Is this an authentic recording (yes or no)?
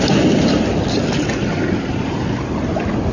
yes